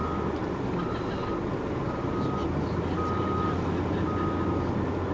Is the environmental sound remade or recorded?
recorded